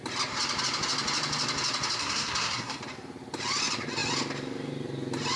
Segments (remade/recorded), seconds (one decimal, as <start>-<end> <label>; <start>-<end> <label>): 0.0-2.0 recorded; 2.0-2.8 remade; 2.8-5.4 recorded